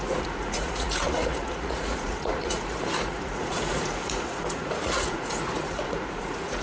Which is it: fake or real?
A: fake